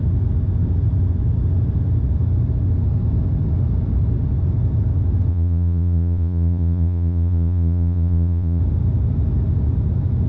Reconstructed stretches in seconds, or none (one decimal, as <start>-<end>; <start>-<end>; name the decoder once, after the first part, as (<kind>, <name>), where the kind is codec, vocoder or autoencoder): 5.3-8.6 (vocoder, Vocos)